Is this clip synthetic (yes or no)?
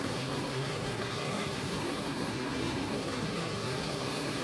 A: yes